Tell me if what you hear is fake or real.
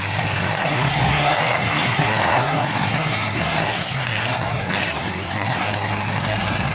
fake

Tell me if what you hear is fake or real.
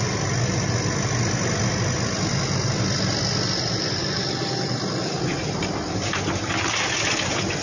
real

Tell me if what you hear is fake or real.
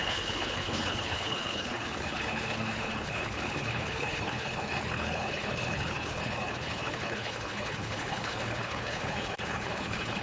fake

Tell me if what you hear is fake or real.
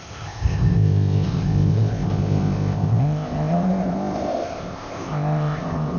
fake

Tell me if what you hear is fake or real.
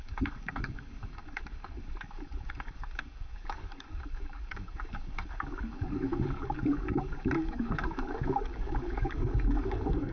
fake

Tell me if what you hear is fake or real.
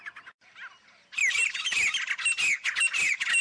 real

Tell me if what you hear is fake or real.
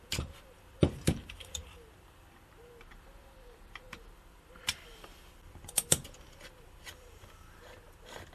fake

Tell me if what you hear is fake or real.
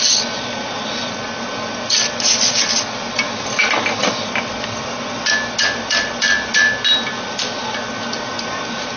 real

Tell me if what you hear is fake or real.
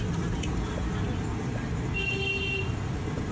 real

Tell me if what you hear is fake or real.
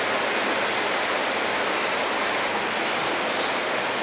real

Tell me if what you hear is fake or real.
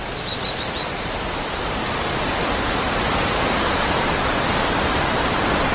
fake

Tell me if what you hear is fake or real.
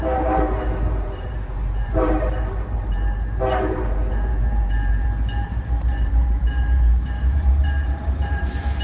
fake